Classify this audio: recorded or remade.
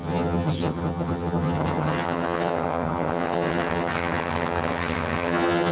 remade